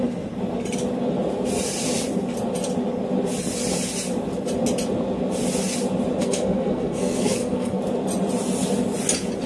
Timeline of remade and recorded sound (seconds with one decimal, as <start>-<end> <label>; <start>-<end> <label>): 0.0-6.2 recorded; 6.2-7.8 remade; 7.8-9.5 recorded